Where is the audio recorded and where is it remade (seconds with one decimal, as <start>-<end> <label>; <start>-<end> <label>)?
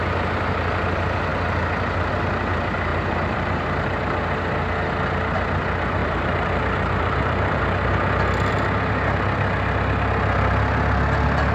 0.0-2.9 recorded; 2.9-4.0 remade; 4.0-6.0 recorded; 6.0-7.6 remade; 7.6-11.5 recorded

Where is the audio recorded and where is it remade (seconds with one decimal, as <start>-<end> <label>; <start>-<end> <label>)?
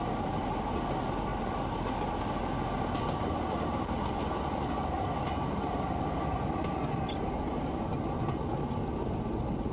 0.0-9.7 recorded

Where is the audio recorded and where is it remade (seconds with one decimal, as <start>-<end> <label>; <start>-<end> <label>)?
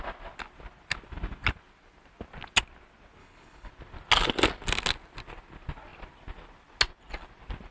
0.0-3.2 recorded; 3.2-3.7 remade; 3.7-7.7 recorded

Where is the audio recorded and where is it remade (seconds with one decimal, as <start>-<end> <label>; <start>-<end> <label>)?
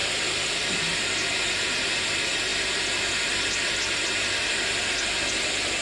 0.0-0.7 remade; 0.7-5.8 recorded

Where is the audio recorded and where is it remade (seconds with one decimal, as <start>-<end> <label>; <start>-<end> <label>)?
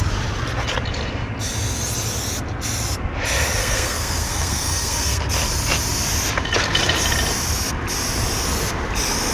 0.0-3.6 recorded; 3.6-5.2 remade; 5.2-9.3 recorded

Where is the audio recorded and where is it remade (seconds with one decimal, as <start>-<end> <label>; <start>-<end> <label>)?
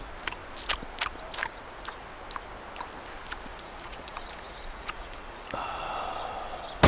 0.0-3.5 recorded; 3.5-5.9 remade; 5.9-6.9 recorded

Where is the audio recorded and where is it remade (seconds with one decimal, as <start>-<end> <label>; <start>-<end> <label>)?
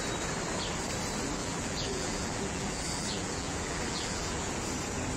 0.0-1.4 recorded; 1.4-4.5 remade; 4.5-5.2 recorded